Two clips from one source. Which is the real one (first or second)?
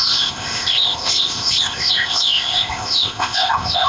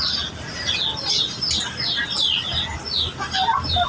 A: second